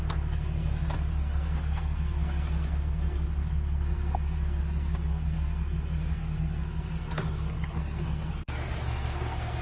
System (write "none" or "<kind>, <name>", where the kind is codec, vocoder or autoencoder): codec, SNAC